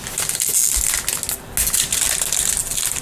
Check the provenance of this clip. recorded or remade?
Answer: recorded